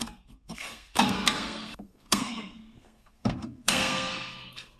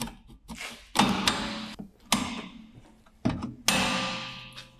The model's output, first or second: first